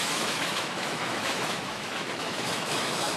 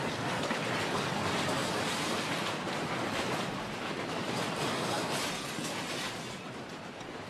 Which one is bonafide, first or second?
second